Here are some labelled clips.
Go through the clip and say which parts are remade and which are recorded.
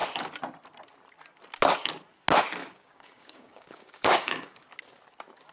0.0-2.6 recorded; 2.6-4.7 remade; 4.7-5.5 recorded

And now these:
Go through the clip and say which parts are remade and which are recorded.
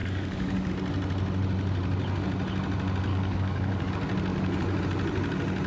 0.0-0.7 remade; 0.7-3.1 recorded; 3.1-3.9 remade; 3.9-4.3 recorded; 4.3-4.8 remade; 4.8-5.7 recorded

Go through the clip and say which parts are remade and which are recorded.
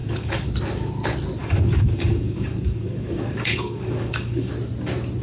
0.0-0.5 remade; 0.5-1.4 recorded; 1.4-4.5 remade; 4.5-5.2 recorded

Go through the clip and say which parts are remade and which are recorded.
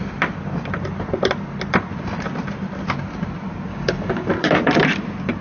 0.0-3.7 recorded; 3.7-4.3 remade; 4.3-5.4 recorded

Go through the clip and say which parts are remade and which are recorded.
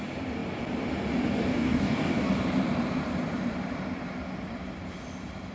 0.0-1.5 recorded; 1.5-2.3 remade; 2.3-5.5 recorded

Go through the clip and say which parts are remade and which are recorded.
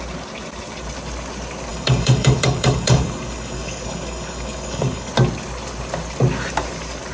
0.0-1.7 recorded; 1.7-5.1 remade; 5.1-7.1 recorded